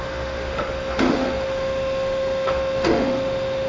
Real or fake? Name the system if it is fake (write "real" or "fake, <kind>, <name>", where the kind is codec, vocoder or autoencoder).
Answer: fake, autoencoder, DAC-VAE